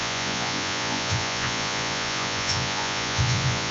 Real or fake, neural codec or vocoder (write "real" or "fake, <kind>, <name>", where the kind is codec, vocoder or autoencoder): fake, vocoder, Vocos